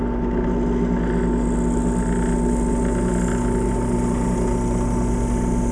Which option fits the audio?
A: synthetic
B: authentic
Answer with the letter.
B